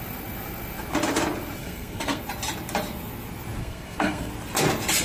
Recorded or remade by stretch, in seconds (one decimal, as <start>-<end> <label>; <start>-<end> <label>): 0.0-1.6 recorded; 1.6-2.2 remade; 2.2-3.6 recorded; 3.6-4.3 remade; 4.3-5.0 recorded